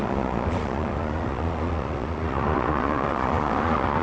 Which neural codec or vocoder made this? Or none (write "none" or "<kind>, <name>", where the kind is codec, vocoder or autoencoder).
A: vocoder, Vocos